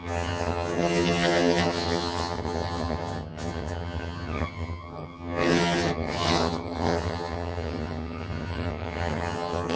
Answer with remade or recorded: remade